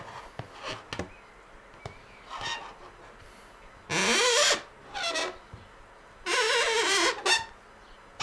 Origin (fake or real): real